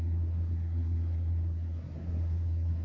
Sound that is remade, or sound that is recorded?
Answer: remade